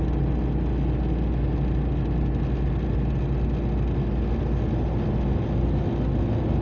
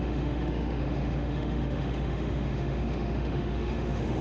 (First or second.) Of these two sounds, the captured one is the first